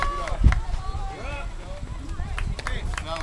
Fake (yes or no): no